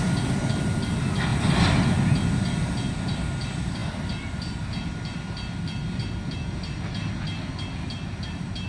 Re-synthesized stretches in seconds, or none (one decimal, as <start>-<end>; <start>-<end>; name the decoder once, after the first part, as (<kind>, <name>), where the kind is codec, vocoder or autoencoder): none